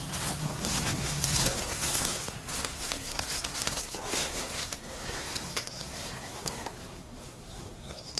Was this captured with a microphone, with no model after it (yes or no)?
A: no